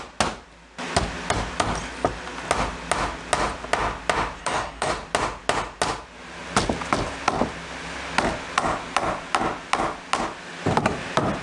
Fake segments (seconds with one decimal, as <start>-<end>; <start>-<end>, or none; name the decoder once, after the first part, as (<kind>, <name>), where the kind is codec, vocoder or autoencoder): 4.4-4.9 (codec, DAC)